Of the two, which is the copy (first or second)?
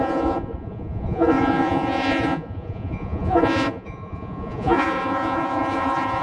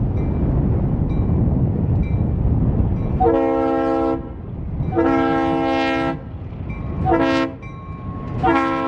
first